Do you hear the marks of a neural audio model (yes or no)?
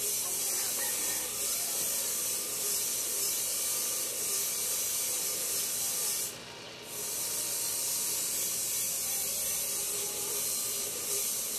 yes